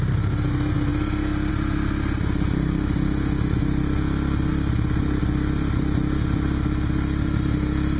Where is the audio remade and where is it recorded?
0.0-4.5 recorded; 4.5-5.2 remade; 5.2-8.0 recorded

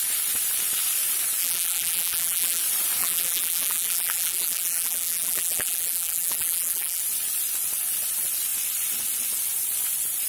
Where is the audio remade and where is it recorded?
0.0-1.4 recorded; 1.4-2.6 remade; 2.6-3.0 recorded; 3.0-7.0 remade; 7.0-10.3 recorded